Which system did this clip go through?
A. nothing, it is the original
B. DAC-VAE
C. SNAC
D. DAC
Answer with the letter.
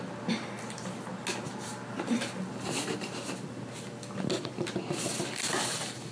A